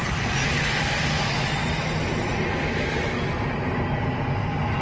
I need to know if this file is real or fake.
real